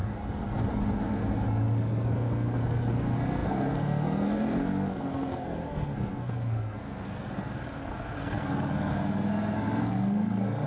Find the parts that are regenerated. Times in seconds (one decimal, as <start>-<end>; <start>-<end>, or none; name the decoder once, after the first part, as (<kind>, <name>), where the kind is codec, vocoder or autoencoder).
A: 0.0-10.7 (codec, SNAC)